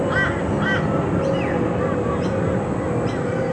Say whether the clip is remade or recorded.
recorded